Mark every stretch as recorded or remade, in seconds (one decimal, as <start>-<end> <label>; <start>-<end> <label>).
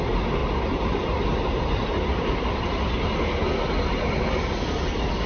0.0-0.4 recorded; 0.4-2.8 remade; 2.8-5.3 recorded